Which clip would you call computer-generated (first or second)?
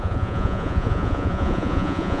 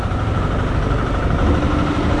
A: first